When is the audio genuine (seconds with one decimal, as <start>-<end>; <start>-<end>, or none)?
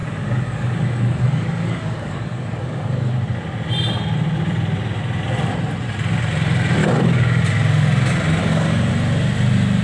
3.1-6.8; 7.4-8.4; 8.9-9.8